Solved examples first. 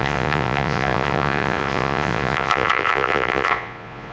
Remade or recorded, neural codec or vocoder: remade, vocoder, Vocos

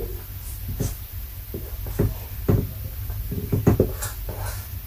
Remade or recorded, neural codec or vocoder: recorded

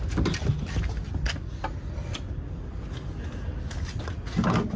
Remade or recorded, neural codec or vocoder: recorded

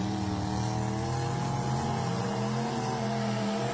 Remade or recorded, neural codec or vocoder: recorded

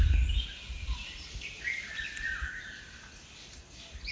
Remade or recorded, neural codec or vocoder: recorded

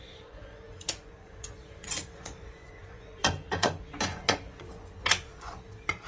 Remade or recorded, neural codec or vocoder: remade, vocoder, Vocos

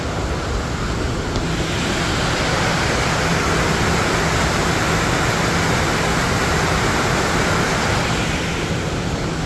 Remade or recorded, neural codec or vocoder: recorded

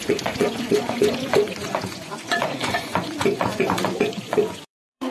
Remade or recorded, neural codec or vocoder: remade, vocoder, Vocos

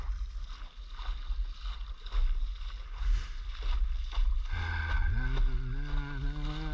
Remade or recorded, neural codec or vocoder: recorded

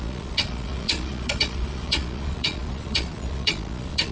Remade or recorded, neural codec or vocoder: remade, vocoder, Vocos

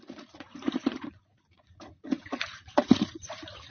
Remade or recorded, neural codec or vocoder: remade, vocoder, Vocos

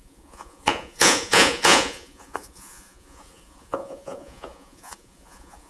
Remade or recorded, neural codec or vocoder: remade, vocoder, Vocos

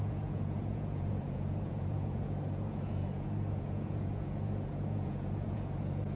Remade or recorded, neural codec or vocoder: remade, vocoder, Vocos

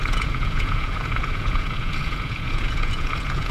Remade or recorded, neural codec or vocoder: remade, vocoder, Vocos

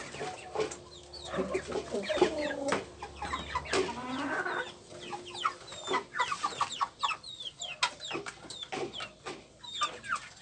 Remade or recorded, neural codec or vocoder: recorded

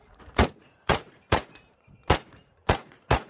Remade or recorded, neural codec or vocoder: remade, vocoder, Vocos